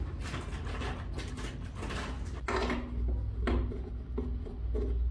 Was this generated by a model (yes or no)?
no